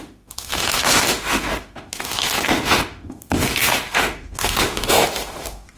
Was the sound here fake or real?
fake